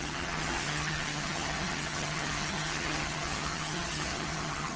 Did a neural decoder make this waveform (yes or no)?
yes